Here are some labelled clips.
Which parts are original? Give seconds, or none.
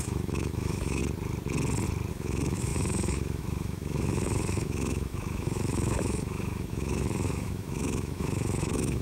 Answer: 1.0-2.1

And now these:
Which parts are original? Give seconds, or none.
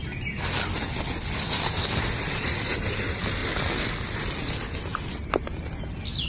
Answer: 0.0-6.3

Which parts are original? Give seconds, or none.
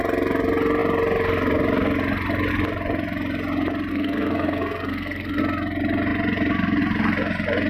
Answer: 0.0-3.9; 5.4-7.7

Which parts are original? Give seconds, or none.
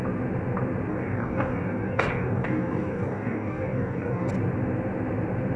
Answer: 0.0-0.9; 4.3-5.6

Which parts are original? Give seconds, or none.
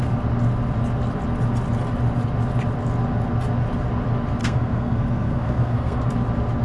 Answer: 0.0-4.4; 6.1-6.6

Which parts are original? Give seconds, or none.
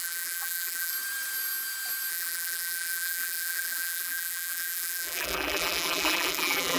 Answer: 0.9-2.1